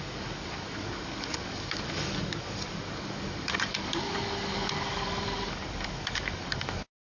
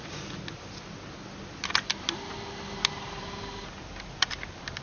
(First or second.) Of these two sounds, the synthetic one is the first